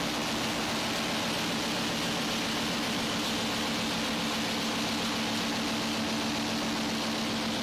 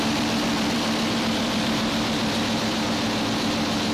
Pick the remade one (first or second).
second